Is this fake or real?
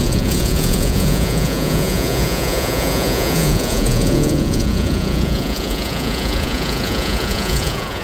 fake